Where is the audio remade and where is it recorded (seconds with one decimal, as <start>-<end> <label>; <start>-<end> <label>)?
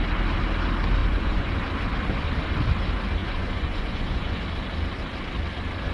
0.0-1.0 recorded; 1.0-1.6 remade; 1.6-3.2 recorded; 3.2-4.4 remade; 4.4-5.9 recorded